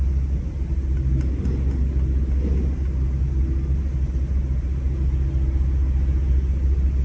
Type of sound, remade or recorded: recorded